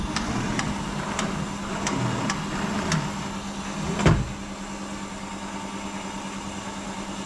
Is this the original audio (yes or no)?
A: yes